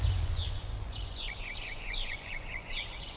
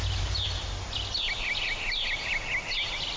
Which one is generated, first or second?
first